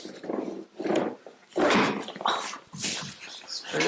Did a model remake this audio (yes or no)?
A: no